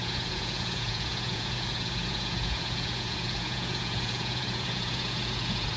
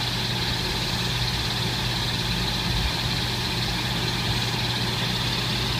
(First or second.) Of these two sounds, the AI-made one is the first